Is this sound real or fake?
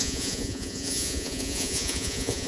fake